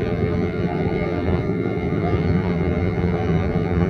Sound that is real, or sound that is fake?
fake